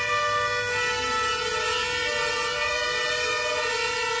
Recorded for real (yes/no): yes